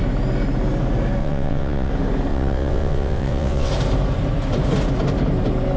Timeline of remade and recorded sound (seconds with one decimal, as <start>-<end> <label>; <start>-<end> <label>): 0.0-1.2 recorded; 1.2-1.9 remade; 1.9-2.3 recorded; 2.3-3.7 remade; 3.7-5.8 recorded